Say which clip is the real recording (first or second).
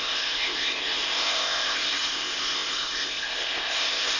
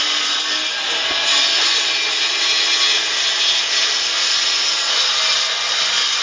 second